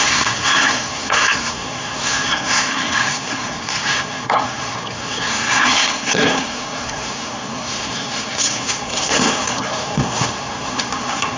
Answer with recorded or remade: remade